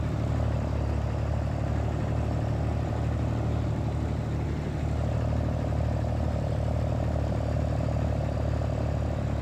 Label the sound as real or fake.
real